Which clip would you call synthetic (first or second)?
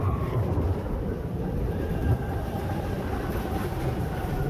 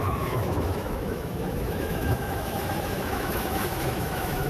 second